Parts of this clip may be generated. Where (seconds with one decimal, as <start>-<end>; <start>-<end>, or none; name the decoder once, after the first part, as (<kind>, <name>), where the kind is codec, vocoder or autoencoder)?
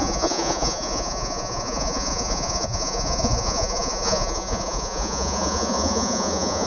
0.0-6.7 (vocoder, Vocos)